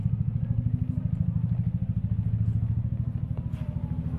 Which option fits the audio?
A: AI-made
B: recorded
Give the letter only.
B